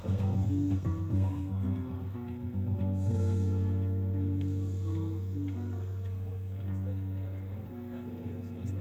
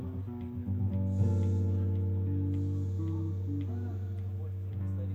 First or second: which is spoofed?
first